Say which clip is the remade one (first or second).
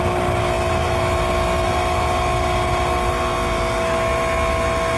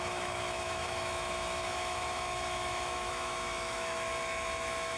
second